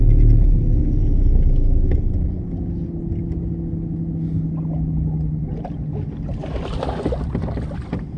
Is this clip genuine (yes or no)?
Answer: yes